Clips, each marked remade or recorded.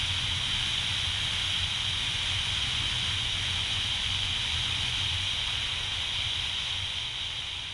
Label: remade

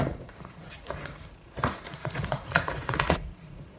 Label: remade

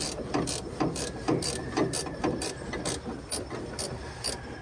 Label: recorded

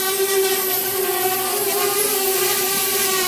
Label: recorded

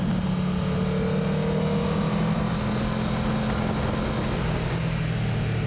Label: recorded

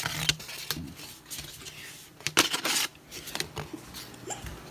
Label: recorded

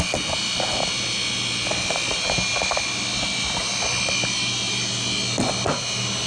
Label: recorded